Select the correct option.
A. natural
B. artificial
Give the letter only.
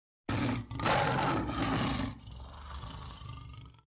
A